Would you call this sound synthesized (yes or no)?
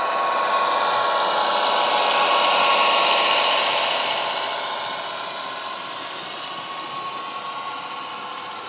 no